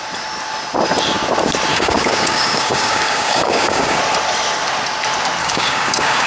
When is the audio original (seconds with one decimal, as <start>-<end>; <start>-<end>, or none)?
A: 0.0-1.7; 4.0-5.4